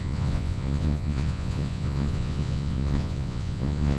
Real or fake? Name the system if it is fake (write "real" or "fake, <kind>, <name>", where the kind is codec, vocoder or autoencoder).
fake, vocoder, Vocos